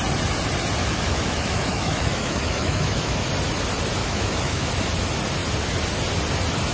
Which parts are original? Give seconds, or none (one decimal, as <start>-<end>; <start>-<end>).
0.0-0.8; 3.3-4.0; 4.7-6.7